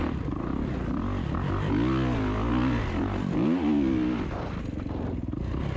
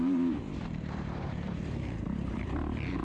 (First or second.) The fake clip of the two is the second